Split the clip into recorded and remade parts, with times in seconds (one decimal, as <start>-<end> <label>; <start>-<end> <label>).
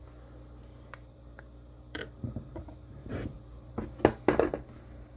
0.0-0.6 recorded; 0.6-3.7 remade; 3.7-5.2 recorded